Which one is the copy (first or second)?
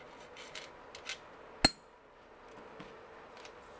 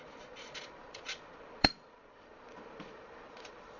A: second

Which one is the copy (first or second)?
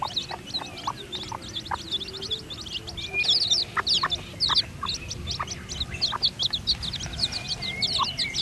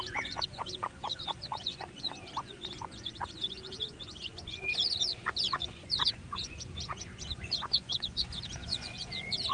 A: second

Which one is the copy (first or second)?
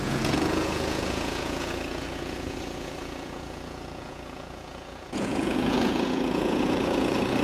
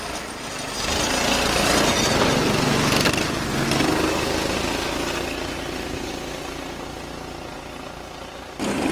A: first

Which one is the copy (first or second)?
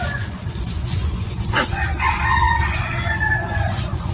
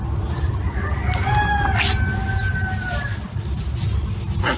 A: first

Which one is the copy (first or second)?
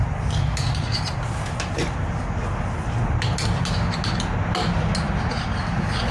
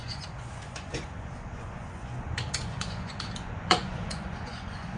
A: second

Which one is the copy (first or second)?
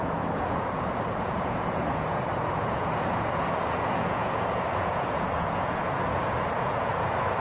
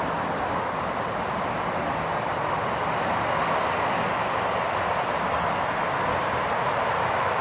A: first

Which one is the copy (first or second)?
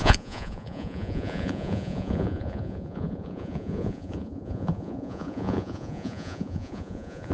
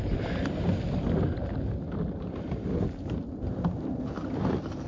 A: first